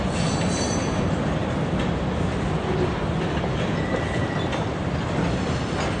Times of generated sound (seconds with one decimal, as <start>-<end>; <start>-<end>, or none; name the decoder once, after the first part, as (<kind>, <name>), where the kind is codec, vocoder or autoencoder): none